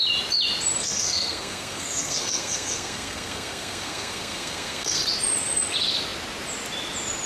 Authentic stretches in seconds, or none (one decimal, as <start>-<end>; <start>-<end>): 0.0-0.8; 5.0-7.3